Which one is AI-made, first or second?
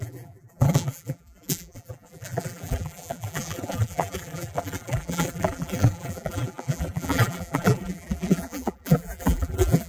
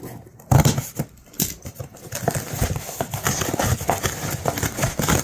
first